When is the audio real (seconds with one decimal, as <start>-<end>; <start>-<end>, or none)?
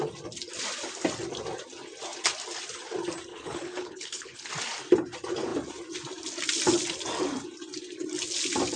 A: 0.0-3.3; 4.5-8.8